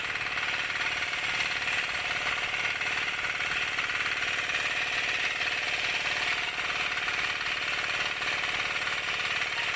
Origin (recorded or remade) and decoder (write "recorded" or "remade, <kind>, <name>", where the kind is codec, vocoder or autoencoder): recorded